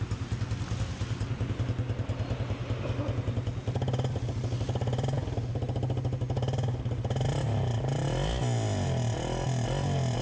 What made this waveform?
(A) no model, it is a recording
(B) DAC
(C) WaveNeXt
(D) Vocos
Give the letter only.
A